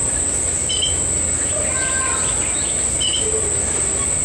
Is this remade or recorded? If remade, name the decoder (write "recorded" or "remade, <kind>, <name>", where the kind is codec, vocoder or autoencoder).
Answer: recorded